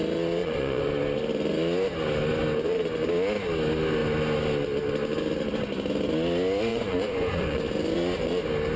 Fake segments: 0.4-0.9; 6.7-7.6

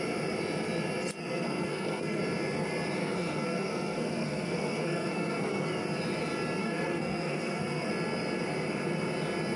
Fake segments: 1.2-2.2; 3.0-5.7; 6.6-7.9

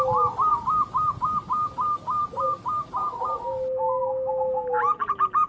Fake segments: none